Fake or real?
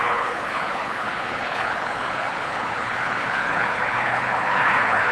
fake